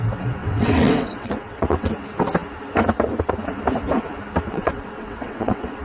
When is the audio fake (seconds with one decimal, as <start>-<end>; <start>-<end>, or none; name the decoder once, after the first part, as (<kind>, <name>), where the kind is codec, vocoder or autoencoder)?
0.4-1.9 (vocoder, WaveNeXt); 4.5-5.8

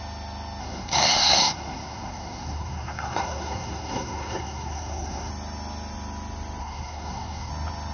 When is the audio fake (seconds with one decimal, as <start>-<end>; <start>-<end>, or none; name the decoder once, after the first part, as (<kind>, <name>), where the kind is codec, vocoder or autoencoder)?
0.6-5.3 (codec, SNAC); 6.6-7.5

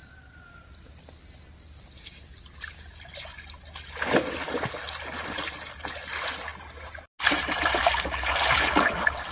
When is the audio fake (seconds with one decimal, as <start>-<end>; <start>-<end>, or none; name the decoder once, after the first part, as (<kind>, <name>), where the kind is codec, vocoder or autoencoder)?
none